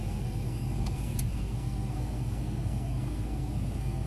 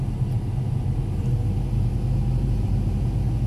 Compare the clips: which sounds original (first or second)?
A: second